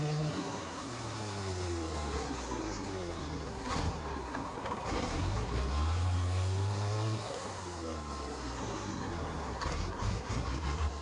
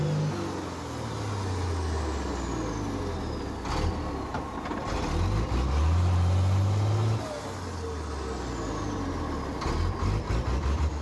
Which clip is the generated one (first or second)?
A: first